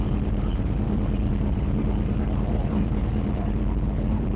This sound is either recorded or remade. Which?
remade